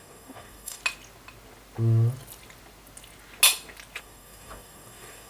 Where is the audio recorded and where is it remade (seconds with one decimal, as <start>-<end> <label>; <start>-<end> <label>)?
0.0-0.8 remade; 0.8-4.0 recorded; 4.0-5.3 remade